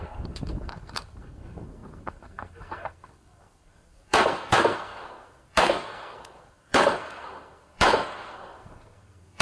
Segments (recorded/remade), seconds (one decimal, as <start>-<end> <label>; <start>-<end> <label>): 0.0-9.4 remade